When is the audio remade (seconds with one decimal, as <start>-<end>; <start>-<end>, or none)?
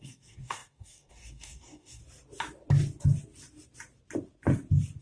0.0-2.0